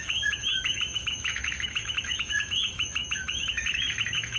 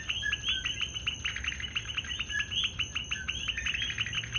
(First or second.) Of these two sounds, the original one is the second